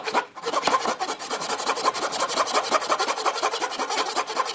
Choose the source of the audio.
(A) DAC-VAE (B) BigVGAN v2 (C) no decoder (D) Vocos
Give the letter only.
C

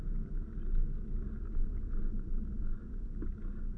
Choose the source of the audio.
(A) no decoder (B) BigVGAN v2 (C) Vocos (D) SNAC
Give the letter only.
A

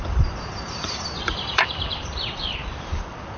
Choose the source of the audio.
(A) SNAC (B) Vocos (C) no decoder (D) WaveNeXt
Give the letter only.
C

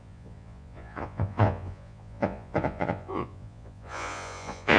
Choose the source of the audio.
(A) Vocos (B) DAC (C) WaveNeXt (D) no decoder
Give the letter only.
A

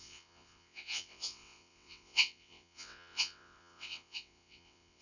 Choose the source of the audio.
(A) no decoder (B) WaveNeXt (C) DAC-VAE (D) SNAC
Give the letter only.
B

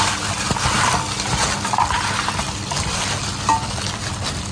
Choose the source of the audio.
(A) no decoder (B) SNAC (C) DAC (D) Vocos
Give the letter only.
A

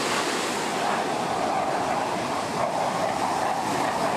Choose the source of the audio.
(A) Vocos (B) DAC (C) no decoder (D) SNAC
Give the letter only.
C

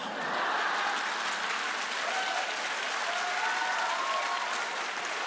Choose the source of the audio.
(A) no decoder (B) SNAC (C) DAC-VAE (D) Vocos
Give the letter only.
A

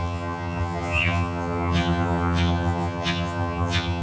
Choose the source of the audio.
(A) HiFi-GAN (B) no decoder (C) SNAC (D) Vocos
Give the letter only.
A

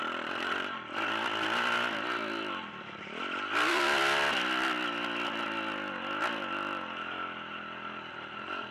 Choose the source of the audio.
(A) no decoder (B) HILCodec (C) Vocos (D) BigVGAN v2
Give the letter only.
A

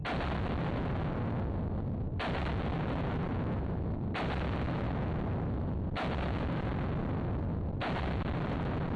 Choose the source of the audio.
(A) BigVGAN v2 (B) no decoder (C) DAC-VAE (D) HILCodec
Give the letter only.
B